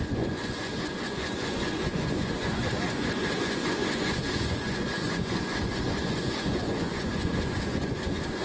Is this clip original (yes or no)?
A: no